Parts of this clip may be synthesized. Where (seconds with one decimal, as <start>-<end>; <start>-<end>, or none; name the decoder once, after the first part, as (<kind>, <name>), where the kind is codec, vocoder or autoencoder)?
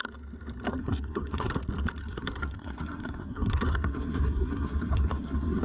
0.8-1.6 (codec, SNAC); 2.0-5.6